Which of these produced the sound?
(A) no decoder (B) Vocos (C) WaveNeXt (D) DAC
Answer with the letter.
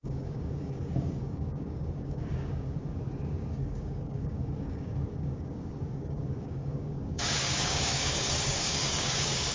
D